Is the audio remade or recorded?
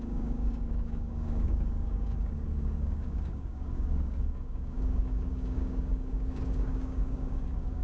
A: remade